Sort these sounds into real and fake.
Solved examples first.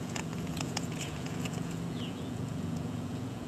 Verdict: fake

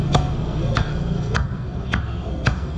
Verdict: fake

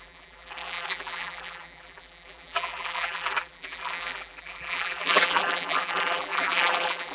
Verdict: fake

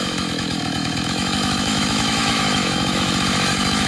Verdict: fake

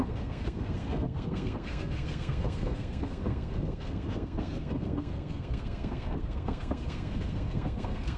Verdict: fake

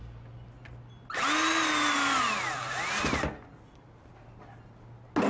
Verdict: real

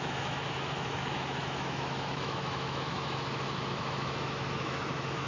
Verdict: fake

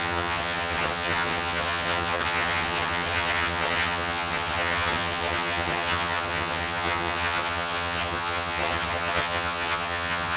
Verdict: fake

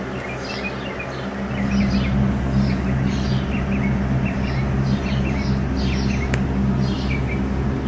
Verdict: real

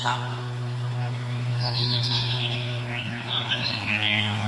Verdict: fake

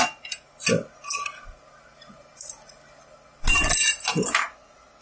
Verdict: real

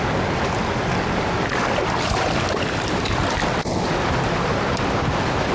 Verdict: real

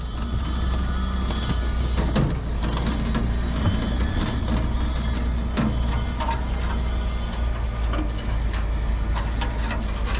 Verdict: real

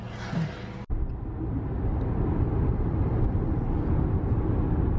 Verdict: real